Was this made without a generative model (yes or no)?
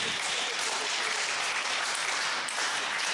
no